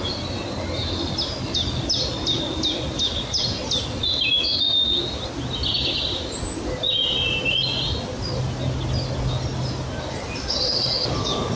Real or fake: real